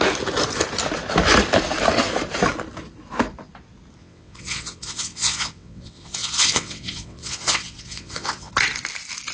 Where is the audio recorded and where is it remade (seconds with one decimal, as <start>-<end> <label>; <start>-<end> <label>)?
0.0-4.0 recorded; 4.0-8.5 remade; 8.5-9.3 recorded

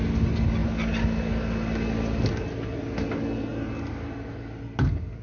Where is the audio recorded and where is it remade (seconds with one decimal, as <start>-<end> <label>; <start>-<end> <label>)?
0.0-5.2 recorded

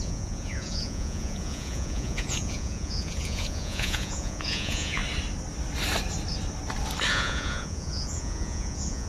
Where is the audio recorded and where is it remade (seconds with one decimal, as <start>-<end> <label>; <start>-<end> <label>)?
0.0-5.0 remade; 5.0-7.1 recorded; 7.1-9.1 remade

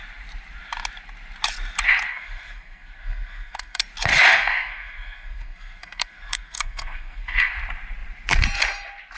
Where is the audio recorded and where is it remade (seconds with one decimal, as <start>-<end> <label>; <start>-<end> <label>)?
0.0-2.1 recorded; 2.1-3.8 remade; 3.8-4.3 recorded; 4.3-7.5 remade; 7.5-9.2 recorded

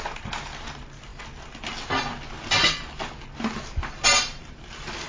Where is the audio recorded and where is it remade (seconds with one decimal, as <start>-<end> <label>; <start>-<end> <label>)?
0.0-5.1 recorded